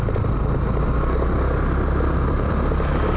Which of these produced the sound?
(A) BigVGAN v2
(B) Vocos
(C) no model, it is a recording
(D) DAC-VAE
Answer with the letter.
C